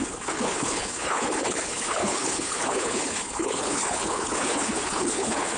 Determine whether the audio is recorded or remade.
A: remade